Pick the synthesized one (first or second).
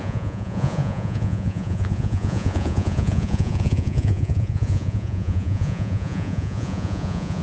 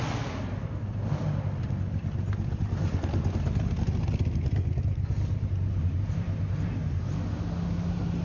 first